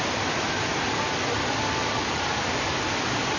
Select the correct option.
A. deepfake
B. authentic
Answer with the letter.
B